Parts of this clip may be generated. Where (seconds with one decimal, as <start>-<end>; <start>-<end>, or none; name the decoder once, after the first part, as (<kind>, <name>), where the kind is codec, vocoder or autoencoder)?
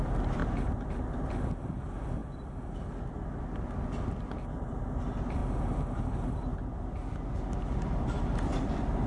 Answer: 0.0-0.4 (vocoder, BigVGAN v2); 0.9-5.4; 6.0-6.5; 7.5-9.1